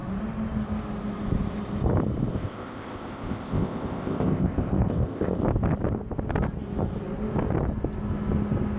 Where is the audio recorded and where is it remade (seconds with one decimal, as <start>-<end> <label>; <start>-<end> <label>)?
0.0-2.3 recorded; 2.3-5.4 remade; 5.4-8.8 recorded